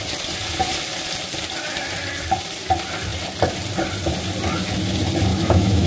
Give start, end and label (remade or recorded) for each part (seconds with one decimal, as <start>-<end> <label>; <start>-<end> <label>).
0.0-5.3 recorded; 5.3-5.9 remade